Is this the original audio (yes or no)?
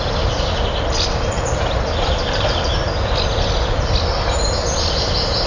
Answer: yes